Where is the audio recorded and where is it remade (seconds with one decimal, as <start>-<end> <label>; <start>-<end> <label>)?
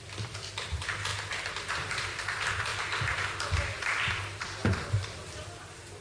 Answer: 0.0-1.1 remade; 1.1-1.7 recorded; 1.7-4.6 remade; 4.6-6.0 recorded